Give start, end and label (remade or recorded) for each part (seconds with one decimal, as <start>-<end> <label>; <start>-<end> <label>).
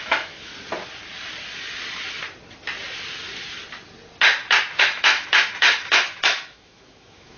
0.0-0.5 remade; 0.5-4.8 recorded; 4.8-7.4 remade